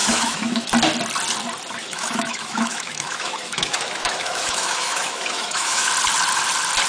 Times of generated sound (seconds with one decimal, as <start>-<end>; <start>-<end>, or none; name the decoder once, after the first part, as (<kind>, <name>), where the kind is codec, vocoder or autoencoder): 0.0-0.7 (autoencoder, DAC-VAE); 1.8-5.9